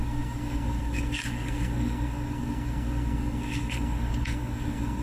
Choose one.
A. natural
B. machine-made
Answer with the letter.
B